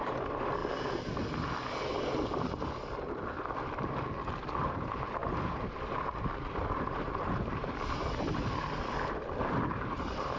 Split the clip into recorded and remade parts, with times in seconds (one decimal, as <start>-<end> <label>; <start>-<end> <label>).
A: 0.0-0.6 remade; 0.6-4.6 recorded; 4.6-7.6 remade; 7.6-9.4 recorded; 9.4-10.4 remade